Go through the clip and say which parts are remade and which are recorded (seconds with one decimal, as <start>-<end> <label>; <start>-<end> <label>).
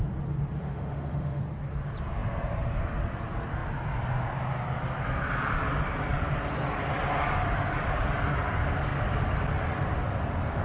0.0-0.6 recorded; 0.6-1.4 remade; 1.4-10.6 recorded